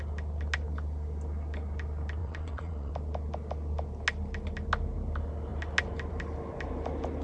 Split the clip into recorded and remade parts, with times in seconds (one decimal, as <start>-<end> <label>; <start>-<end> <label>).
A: 0.0-2.2 recorded; 2.2-2.9 remade; 2.9-7.2 recorded